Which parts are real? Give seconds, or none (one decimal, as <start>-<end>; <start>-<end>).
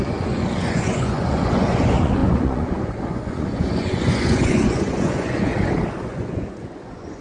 5.5-6.0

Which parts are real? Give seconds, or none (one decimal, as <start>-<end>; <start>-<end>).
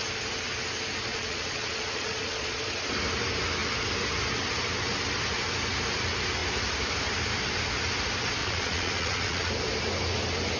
0.0-1.1; 2.6-8.4; 9.5-10.6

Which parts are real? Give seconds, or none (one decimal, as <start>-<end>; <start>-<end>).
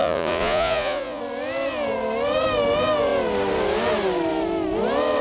1.2-5.2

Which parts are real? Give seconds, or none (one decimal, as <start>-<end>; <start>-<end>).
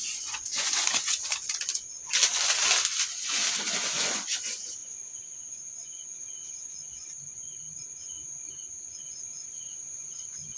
1.2-3.8